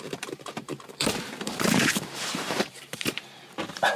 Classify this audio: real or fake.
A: fake